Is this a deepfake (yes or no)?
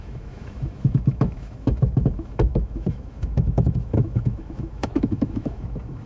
yes